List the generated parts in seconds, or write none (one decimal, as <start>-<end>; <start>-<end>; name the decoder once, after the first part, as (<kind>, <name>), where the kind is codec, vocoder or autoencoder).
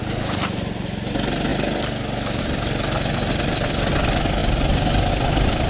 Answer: none